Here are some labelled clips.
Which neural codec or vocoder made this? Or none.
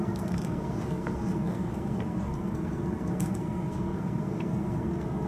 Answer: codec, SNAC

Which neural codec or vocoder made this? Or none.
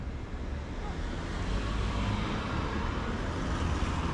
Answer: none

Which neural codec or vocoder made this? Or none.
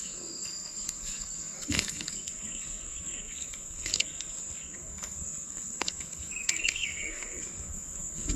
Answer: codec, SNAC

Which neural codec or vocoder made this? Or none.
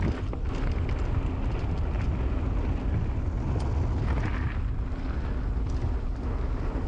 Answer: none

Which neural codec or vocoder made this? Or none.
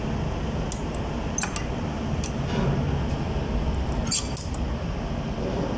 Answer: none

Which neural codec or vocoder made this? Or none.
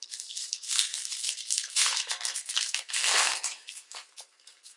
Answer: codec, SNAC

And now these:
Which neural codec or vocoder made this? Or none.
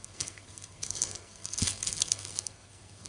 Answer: codec, SNAC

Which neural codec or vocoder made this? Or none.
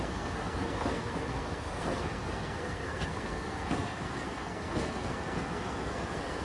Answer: codec, SNAC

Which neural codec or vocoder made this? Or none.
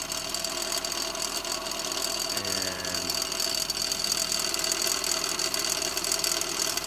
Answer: none